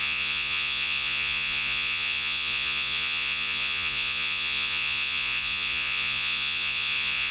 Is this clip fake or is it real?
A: fake